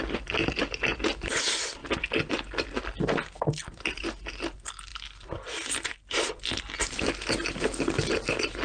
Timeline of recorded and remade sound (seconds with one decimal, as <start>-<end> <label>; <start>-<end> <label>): 0.0-8.6 recorded